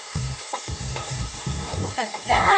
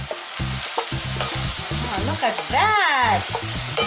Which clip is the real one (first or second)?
second